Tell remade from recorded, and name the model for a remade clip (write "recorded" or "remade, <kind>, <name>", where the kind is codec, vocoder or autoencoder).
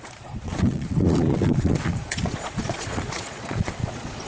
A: remade, vocoder, Vocos